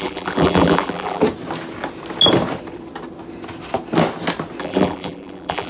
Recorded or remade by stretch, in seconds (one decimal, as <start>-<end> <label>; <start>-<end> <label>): 0.0-1.2 remade; 1.2-4.6 recorded; 4.6-5.7 remade